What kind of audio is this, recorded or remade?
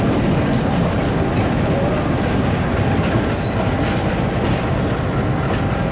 recorded